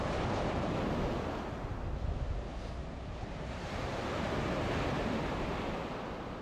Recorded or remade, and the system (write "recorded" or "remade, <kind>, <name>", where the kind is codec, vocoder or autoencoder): recorded